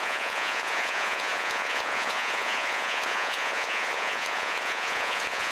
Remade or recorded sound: remade